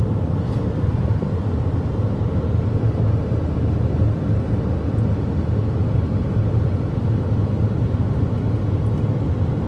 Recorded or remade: recorded